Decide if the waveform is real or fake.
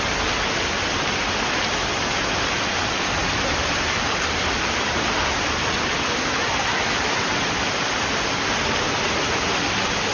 real